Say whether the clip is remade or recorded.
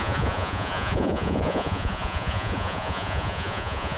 remade